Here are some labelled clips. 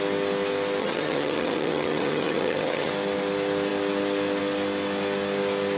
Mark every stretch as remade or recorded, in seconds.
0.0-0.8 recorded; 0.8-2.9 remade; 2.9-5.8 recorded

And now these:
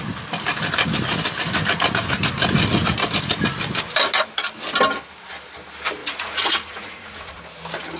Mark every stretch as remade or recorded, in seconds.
0.0-6.0 recorded; 6.0-7.4 remade; 7.4-8.0 recorded

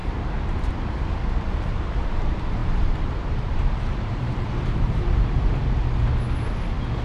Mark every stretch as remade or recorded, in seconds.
0.0-0.7 remade; 0.7-2.6 recorded; 2.6-5.4 remade; 5.4-7.0 recorded

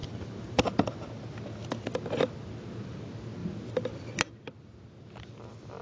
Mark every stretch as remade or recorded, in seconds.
0.0-0.6 remade; 0.6-5.8 recorded

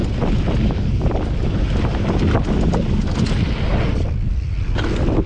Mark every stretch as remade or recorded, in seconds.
0.0-5.3 recorded

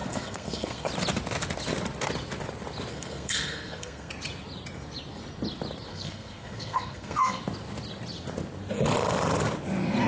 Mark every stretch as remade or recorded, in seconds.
0.0-0.9 remade; 0.9-2.9 recorded; 2.9-4.1 remade; 4.1-5.9 recorded; 5.9-7.4 remade; 7.4-10.1 recorded